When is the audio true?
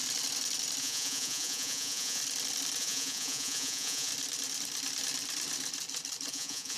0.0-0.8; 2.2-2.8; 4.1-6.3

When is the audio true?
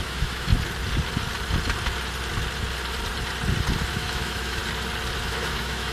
0.5-3.9; 4.6-5.2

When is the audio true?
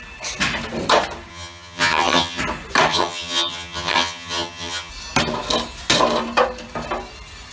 0.0-1.3; 2.4-2.9; 4.9-7.5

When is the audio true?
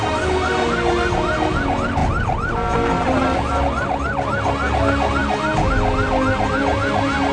0.0-7.3